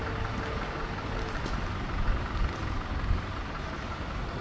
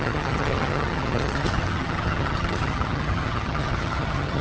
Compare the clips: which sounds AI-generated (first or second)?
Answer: second